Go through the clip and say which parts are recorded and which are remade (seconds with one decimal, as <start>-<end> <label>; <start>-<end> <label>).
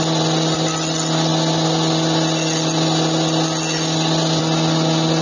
0.0-5.2 recorded